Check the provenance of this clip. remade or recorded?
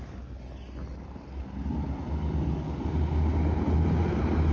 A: recorded